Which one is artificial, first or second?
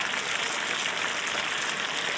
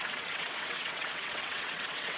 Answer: second